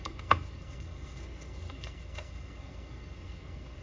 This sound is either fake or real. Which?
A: fake